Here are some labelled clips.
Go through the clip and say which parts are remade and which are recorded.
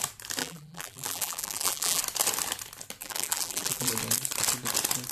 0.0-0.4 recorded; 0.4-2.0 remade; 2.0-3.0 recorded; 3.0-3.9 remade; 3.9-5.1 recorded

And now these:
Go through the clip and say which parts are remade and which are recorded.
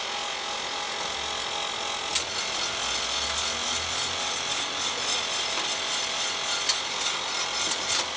0.0-8.2 recorded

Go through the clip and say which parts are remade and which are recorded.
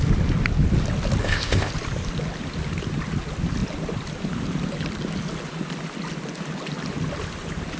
0.0-1.2 recorded; 1.2-1.7 remade; 1.7-7.8 recorded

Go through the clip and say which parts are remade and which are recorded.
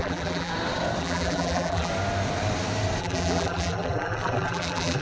0.0-0.5 remade; 0.5-1.0 recorded; 1.0-1.9 remade; 1.9-3.0 recorded; 3.0-5.0 remade